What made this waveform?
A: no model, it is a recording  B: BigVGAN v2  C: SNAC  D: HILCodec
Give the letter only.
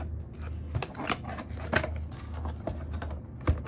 A